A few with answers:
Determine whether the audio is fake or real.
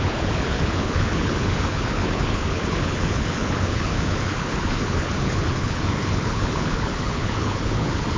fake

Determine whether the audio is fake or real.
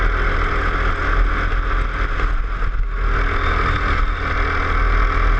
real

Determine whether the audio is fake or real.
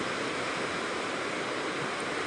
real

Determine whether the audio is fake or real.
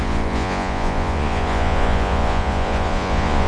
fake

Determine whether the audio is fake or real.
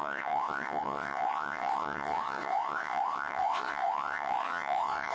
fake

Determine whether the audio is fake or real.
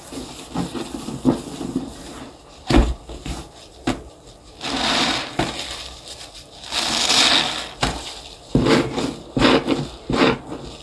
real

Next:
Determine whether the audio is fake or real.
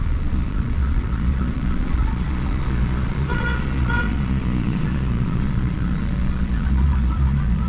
fake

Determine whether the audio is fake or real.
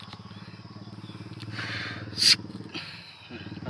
real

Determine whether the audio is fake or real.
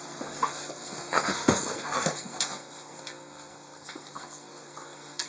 fake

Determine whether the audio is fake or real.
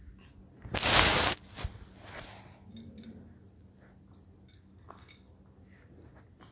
real